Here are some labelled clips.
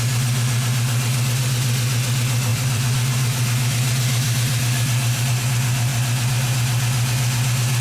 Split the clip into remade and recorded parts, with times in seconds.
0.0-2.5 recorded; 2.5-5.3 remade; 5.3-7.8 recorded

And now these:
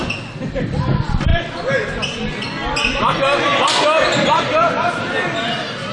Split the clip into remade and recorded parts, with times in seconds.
0.0-5.9 recorded